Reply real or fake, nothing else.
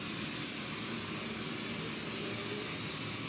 real